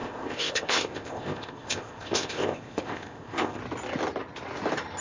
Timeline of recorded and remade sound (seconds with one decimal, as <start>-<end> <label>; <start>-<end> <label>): 0.0-3.6 remade; 3.6-5.0 recorded